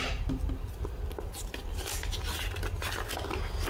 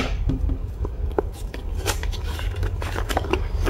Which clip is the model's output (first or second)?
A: second